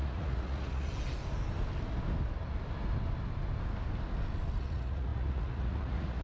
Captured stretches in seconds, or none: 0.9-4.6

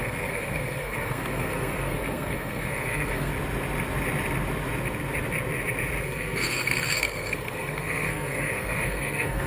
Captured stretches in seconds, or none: 3.3-6.0

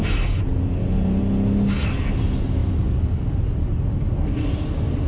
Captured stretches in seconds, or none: 0.0-5.1